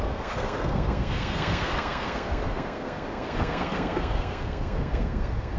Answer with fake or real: fake